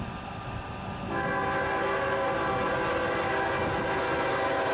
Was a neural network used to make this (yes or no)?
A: no